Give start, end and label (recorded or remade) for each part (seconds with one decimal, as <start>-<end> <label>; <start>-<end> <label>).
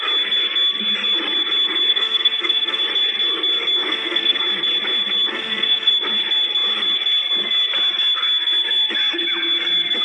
0.0-1.9 recorded; 1.9-2.8 remade; 2.8-3.9 recorded; 3.9-4.4 remade; 4.4-5.3 recorded; 5.3-5.9 remade; 5.9-10.0 recorded